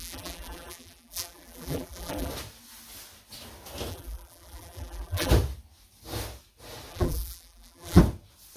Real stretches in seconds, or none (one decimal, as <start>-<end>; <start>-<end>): 2.3-3.9; 5.3-6.9; 8.0-8.6